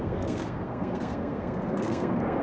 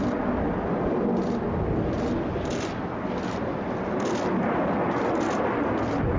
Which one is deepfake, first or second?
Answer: first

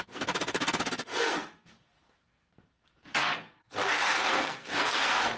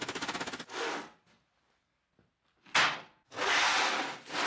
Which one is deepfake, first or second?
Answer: first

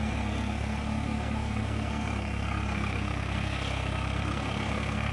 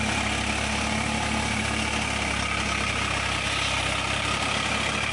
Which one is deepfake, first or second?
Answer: first